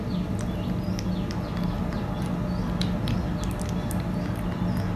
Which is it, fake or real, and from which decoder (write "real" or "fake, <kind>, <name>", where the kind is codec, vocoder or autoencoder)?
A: real